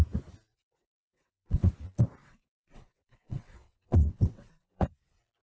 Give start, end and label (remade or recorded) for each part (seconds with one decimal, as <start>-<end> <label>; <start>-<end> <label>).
0.0-0.5 recorded; 0.5-1.7 remade; 1.7-2.2 recorded; 2.2-4.9 remade; 4.9-5.4 recorded